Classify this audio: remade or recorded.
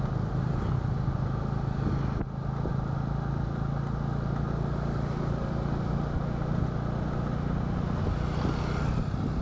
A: recorded